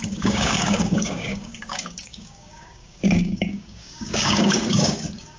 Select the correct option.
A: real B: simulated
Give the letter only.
B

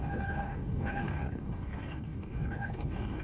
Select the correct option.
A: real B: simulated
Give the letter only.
B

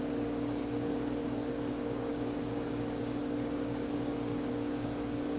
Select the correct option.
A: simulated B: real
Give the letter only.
A